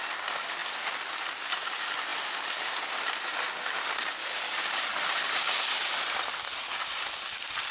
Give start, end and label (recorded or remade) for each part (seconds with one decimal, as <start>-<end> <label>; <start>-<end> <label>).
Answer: 0.0-7.7 recorded